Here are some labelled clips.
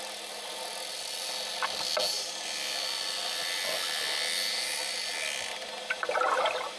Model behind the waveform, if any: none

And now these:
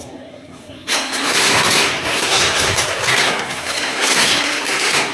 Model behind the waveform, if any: codec, SNAC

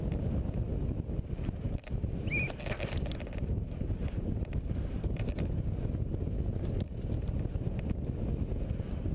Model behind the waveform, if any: none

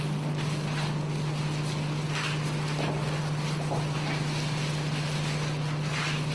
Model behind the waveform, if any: none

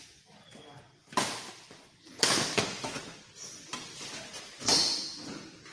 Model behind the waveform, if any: none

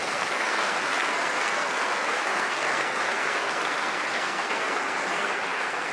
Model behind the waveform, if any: codec, SNAC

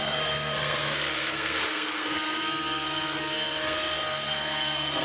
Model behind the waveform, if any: codec, SNAC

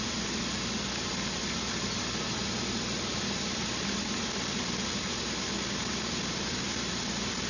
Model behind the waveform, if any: none